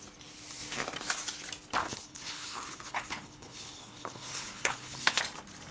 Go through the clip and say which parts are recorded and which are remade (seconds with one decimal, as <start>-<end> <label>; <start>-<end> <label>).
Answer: 0.0-1.8 recorded; 1.8-5.2 remade; 5.2-5.7 recorded